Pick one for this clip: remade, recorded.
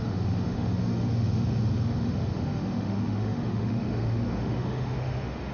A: remade